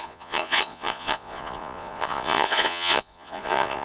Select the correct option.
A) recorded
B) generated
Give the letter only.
B